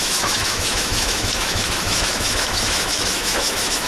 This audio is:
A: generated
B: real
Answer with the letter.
A